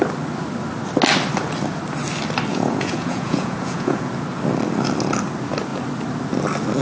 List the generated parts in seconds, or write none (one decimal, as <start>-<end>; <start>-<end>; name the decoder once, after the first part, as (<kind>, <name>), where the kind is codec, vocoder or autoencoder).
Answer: 2.5-4.1 (vocoder, Vocos)